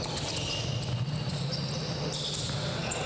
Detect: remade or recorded recorded